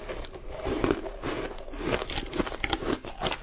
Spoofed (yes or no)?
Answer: no